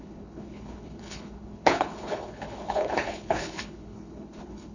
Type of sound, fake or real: fake